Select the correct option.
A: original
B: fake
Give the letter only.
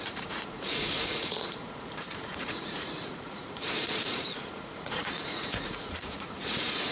B